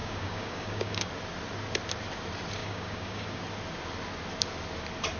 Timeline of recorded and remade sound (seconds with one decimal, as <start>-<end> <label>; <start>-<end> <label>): 0.0-1.1 remade; 1.1-2.6 recorded; 2.6-3.4 remade; 3.4-5.2 recorded